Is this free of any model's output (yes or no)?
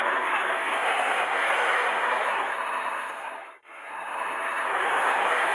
no